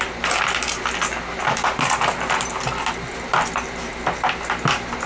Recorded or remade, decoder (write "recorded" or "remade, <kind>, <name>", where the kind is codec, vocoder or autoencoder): recorded